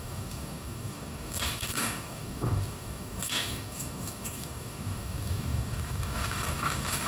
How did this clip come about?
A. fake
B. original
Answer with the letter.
A